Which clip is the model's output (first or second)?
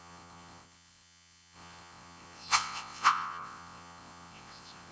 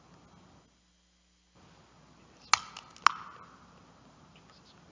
first